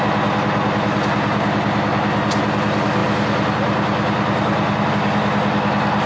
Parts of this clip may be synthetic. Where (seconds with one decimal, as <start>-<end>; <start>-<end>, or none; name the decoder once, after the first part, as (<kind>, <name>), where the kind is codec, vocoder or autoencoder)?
none